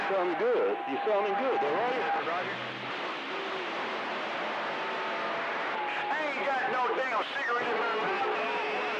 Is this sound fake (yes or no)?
no